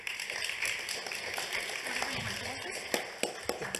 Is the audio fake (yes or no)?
no